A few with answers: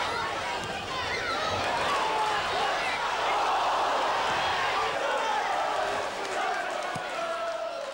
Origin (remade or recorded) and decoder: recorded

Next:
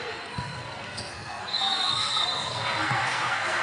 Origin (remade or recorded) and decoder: remade, codec, SNAC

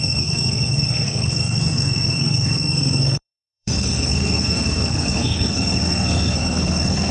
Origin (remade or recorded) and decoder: remade, codec, SNAC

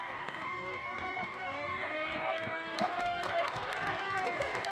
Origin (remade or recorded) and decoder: remade, codec, DAC